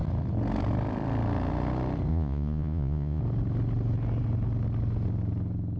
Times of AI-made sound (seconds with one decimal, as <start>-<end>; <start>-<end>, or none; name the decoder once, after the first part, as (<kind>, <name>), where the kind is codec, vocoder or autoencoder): 2.1-3.2 (vocoder, Vocos)